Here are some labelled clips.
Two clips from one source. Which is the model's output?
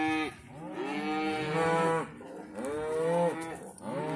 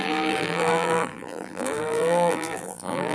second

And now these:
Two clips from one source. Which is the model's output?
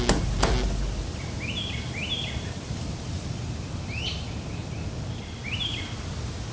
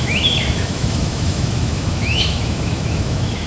second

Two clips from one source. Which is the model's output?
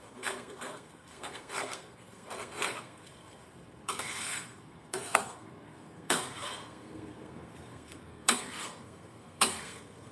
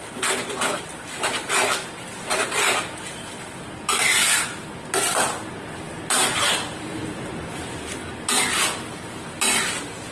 first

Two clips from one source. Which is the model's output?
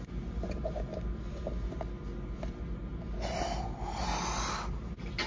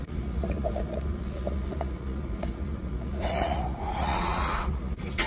second